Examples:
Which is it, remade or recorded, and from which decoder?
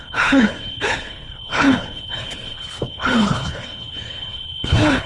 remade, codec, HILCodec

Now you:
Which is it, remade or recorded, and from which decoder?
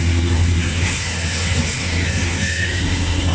remade, codec, SNAC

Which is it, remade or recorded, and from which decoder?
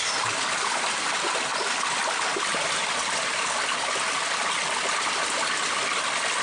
recorded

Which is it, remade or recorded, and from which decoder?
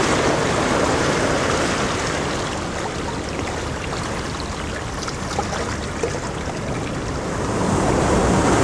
recorded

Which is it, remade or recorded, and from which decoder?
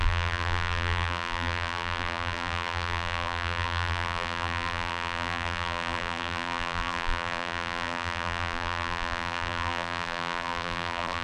remade, vocoder, BigVGAN v2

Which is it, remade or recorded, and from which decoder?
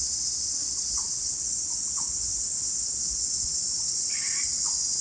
remade, vocoder, Vocos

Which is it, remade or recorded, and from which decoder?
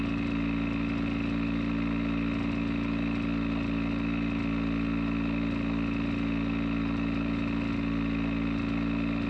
recorded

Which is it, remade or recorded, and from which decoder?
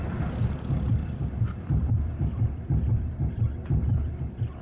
remade, vocoder, BigVGAN v2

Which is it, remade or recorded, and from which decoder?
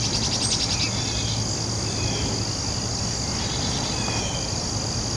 recorded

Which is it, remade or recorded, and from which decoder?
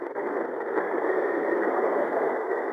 remade, codec, SNAC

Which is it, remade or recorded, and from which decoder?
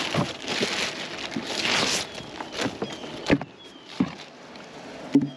recorded